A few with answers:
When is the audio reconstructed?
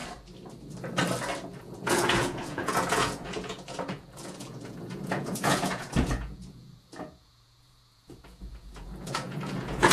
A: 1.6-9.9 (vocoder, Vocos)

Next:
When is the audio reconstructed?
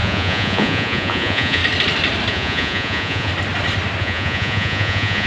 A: 0.0-1.6 (vocoder, Vocos); 2.3-3.3; 4.0-5.3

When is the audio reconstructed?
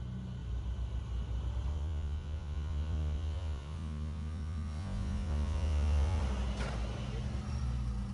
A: 1.7-6.2 (vocoder, Vocos)